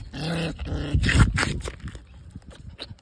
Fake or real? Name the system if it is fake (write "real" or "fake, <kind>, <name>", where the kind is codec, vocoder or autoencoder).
real